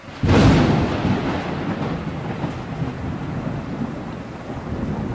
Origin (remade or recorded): recorded